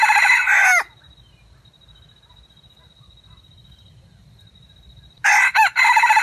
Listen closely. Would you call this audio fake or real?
real